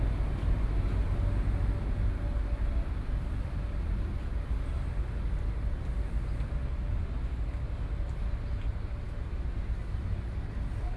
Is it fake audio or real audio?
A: real